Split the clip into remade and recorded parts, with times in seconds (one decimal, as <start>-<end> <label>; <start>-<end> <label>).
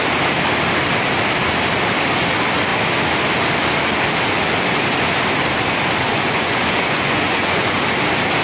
0.0-6.1 recorded; 6.1-7.8 remade; 7.8-8.4 recorded